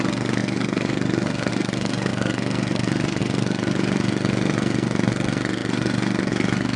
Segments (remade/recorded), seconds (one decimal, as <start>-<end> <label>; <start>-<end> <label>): 0.0-6.8 remade